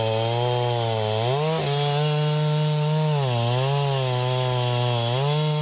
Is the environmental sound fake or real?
real